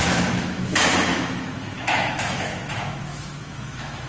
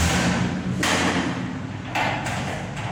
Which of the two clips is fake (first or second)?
first